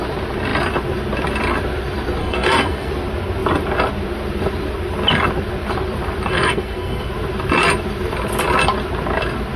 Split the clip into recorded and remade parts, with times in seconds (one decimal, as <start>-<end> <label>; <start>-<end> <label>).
0.0-2.2 recorded; 2.2-2.9 remade; 2.9-6.3 recorded; 6.3-7.1 remade; 7.1-9.6 recorded